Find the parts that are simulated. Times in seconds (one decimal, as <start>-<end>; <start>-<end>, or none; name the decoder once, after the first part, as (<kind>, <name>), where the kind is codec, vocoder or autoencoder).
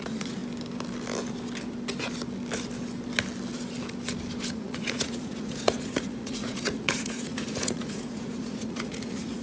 0.0-0.4 (vocoder, Vocos); 4.5-9.4